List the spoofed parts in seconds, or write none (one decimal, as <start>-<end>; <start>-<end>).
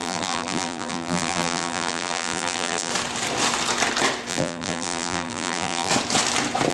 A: 0.0-2.9; 4.3-5.9